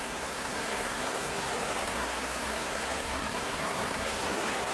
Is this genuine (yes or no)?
no